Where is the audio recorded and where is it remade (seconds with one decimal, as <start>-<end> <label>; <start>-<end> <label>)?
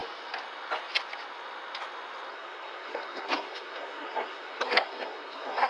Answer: 0.0-2.3 recorded; 2.3-5.7 remade